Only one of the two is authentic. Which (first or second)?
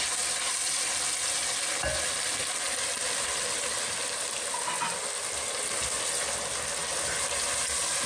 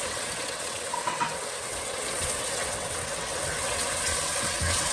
first